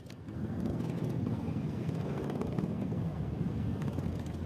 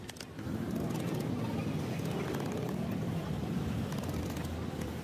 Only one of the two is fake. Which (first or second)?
first